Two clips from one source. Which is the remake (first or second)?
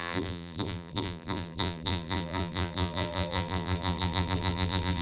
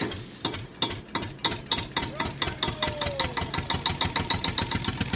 first